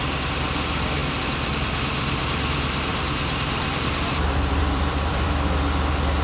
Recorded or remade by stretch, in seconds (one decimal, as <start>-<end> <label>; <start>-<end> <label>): 0.0-2.9 recorded; 2.9-5.3 remade; 5.3-6.2 recorded

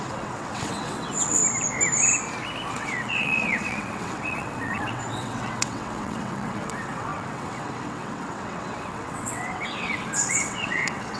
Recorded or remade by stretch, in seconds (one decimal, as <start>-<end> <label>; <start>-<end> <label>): 0.0-1.4 remade; 1.4-2.7 recorded; 2.7-11.2 remade

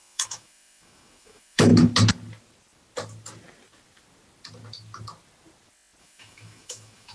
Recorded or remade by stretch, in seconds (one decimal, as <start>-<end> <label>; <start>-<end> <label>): 0.0-1.7 remade; 1.7-6.0 recorded; 6.0-7.1 remade

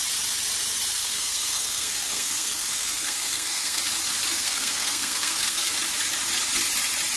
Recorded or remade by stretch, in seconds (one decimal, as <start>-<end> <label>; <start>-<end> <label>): 0.0-1.0 recorded; 1.0-3.8 remade; 3.8-4.3 recorded; 4.3-5.7 remade; 5.7-7.2 recorded

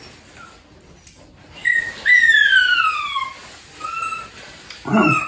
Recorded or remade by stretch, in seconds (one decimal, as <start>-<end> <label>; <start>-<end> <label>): 0.0-5.3 recorded

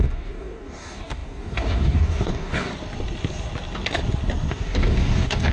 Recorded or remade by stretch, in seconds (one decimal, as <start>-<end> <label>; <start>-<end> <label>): 0.0-2.7 remade; 2.7-4.5 recorded; 4.5-5.5 remade